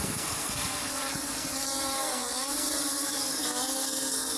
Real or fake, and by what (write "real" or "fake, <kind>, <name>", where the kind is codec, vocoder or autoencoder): fake, codec, SNAC